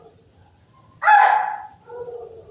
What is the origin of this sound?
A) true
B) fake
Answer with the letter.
A